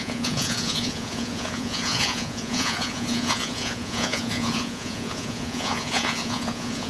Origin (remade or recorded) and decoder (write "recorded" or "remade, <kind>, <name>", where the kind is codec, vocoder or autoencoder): remade, vocoder, Vocos